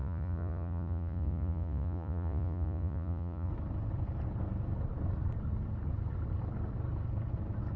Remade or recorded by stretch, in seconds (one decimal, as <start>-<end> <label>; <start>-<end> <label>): 0.0-3.5 remade; 3.5-7.8 recorded

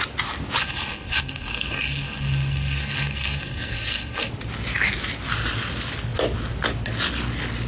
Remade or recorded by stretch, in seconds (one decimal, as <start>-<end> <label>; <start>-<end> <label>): 0.0-0.6 recorded; 0.6-4.3 remade; 4.3-7.7 recorded